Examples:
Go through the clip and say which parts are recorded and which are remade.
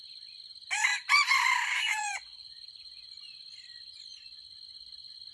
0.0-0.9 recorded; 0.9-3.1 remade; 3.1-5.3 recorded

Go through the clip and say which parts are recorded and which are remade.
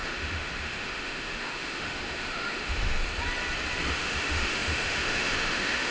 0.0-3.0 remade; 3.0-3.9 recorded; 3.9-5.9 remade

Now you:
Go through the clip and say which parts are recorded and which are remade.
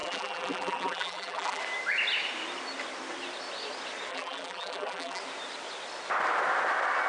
0.0-1.6 remade; 1.6-4.1 recorded; 4.1-5.2 remade; 5.2-7.1 recorded